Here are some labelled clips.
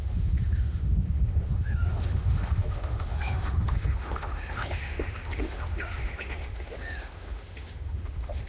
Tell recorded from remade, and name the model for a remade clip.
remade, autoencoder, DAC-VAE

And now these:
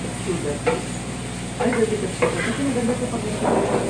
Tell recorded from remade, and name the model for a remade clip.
recorded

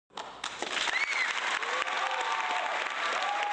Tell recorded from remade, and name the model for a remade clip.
recorded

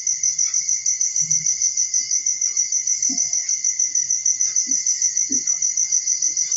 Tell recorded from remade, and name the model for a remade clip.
recorded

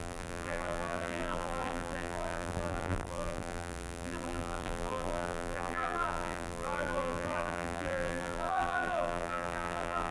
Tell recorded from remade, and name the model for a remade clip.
remade, vocoder, BigVGAN v2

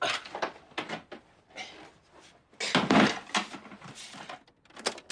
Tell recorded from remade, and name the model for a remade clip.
recorded